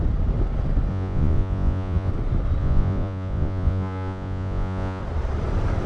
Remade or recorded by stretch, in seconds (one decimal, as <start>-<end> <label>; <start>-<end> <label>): 0.0-0.9 recorded; 0.9-2.1 remade; 2.1-2.6 recorded; 2.6-5.0 remade; 5.0-5.9 recorded